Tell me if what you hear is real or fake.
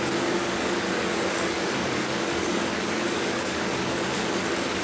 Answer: fake